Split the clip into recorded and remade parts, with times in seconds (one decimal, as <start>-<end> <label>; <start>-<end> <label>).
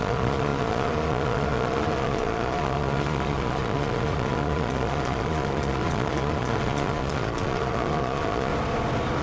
0.0-8.5 remade; 8.5-9.2 recorded